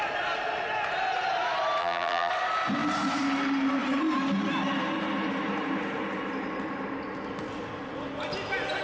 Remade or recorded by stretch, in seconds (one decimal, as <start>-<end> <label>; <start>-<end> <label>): 0.0-1.8 recorded; 1.8-2.3 remade; 2.3-8.8 recorded